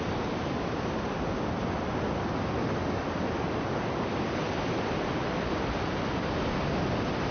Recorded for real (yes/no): yes